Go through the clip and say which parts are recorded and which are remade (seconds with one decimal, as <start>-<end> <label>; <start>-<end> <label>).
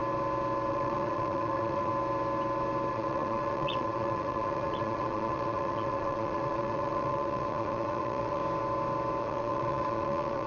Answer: 0.0-0.7 recorded; 0.7-1.9 remade; 1.9-2.9 recorded; 2.9-8.4 remade; 8.4-9.2 recorded; 9.2-10.5 remade